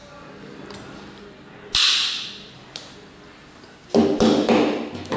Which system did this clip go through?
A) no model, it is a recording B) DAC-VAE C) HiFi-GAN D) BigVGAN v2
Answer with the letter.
A